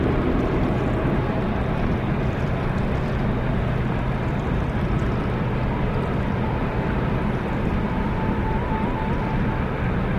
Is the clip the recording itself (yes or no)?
yes